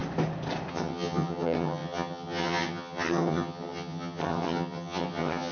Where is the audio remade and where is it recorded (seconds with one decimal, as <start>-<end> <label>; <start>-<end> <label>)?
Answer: 0.0-0.7 recorded; 0.7-5.5 remade